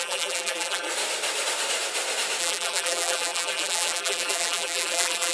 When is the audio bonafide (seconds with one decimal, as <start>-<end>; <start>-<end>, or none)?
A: 0.9-2.4

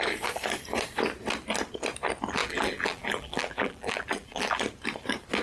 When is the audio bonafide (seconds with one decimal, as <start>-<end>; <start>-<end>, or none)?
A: 0.0-2.4; 4.6-5.4

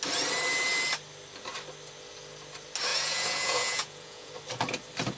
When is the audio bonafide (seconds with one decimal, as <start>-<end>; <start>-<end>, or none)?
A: 0.0-2.9; 4.3-5.2

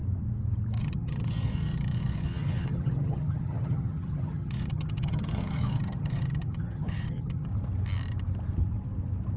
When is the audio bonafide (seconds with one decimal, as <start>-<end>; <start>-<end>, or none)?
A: 0.0-0.8; 7.5-9.4

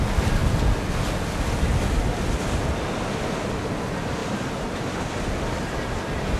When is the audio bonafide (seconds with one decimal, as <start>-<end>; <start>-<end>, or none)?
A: 0.0-4.2; 5.1-6.4

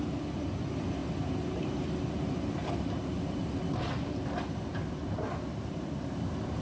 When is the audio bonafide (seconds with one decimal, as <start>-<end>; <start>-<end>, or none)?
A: 0.0-1.0; 3.6-4.7

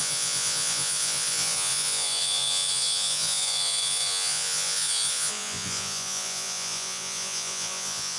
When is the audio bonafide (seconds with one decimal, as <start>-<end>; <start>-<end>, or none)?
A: none